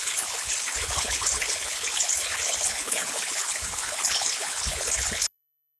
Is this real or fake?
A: fake